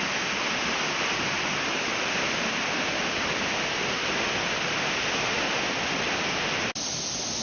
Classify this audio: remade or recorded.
recorded